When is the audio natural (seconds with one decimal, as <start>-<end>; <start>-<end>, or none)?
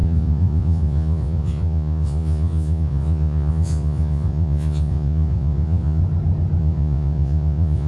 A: 6.0-6.6